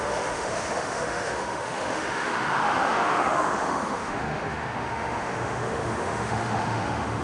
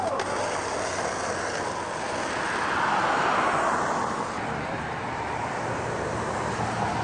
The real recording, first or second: second